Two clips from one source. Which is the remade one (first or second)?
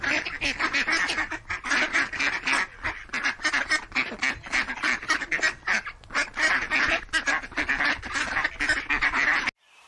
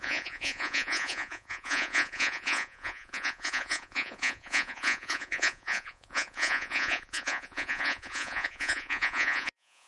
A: second